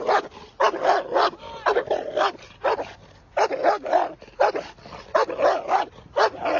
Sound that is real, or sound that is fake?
real